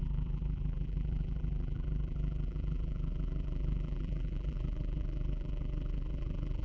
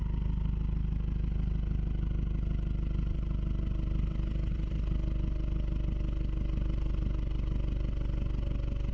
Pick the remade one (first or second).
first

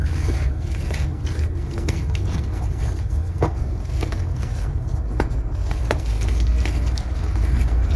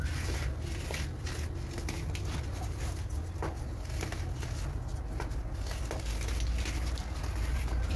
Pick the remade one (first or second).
first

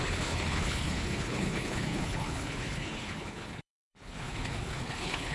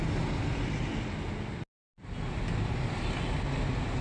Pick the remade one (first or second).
first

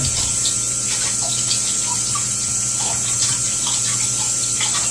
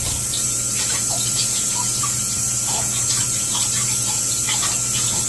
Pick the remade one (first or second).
second